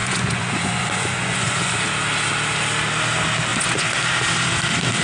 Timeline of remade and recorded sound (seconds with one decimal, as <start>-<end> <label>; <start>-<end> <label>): 0.0-1.8 remade; 1.8-3.5 recorded; 3.5-4.0 remade; 4.0-5.0 recorded